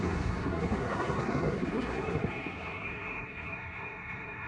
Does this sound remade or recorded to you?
remade